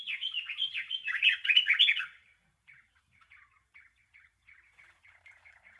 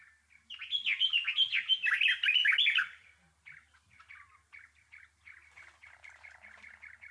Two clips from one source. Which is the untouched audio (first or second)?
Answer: second